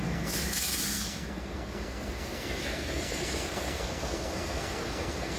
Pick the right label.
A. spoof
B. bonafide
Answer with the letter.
A